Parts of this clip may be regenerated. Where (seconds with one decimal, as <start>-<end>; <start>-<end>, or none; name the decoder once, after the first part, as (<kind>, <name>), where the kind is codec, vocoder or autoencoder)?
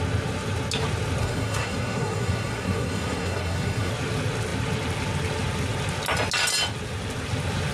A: 1.2-3.9 (codec, SNAC)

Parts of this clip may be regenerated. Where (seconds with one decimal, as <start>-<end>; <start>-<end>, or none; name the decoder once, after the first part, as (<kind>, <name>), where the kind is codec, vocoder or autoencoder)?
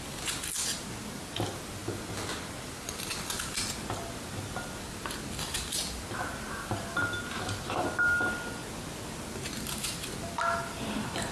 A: none